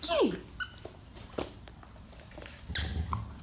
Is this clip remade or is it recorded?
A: recorded